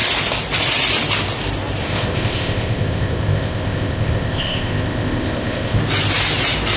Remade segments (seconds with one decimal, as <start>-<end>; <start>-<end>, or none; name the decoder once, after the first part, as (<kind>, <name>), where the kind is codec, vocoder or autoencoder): 1.8-5.8 (codec, ZipCodec)